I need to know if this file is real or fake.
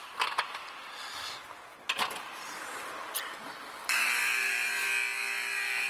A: real